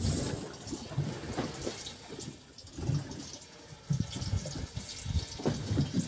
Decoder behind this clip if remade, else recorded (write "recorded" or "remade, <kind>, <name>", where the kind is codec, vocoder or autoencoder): recorded